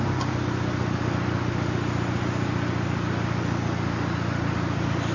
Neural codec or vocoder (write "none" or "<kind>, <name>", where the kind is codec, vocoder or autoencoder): none